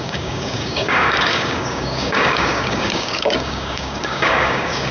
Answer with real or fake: fake